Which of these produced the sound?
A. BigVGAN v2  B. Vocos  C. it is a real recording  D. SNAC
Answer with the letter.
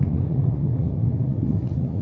B